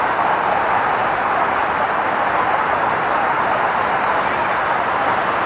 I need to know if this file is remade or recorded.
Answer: recorded